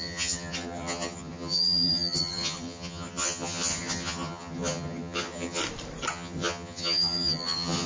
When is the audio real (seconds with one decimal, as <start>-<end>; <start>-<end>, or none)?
5.6-6.1

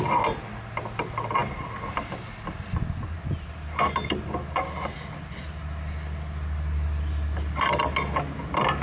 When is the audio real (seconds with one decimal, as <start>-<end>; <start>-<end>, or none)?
0.0-8.8

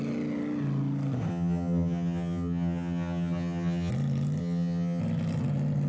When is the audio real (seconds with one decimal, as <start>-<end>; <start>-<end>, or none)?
0.0-1.3; 3.9-4.4; 5.0-5.9

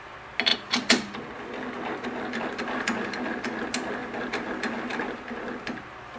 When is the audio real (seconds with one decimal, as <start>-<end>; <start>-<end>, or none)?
0.0-6.2